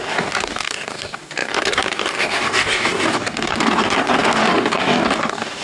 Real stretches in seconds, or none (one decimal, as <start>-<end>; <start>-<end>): none